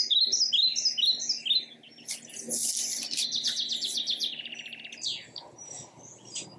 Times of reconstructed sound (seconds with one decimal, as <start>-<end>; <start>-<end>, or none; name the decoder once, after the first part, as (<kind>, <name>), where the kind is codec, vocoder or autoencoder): none